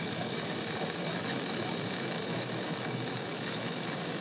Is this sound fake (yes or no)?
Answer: yes